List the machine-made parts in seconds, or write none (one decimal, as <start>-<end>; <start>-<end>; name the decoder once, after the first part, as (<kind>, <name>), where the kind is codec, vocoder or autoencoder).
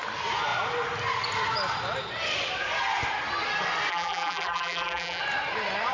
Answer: 3.9-5.2 (vocoder, BigVGAN v2)